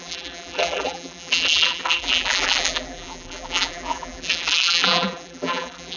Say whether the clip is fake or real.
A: fake